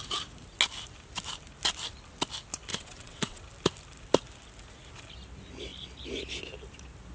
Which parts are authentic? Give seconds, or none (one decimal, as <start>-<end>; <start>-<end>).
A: 0.0-2.7; 3.4-7.1